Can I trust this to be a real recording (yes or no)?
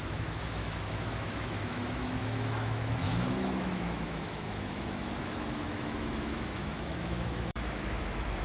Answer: no